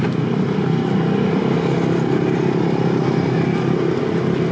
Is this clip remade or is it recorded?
recorded